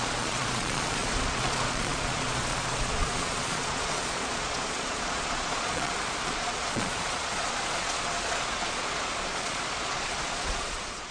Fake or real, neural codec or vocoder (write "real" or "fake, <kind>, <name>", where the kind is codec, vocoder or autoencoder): fake, vocoder, Vocos